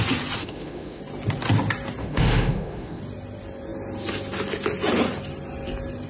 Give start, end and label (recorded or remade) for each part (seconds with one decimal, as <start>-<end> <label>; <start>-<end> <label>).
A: 0.0-0.4 recorded; 0.4-1.0 remade; 1.0-2.0 recorded; 2.0-3.0 remade; 3.0-6.1 recorded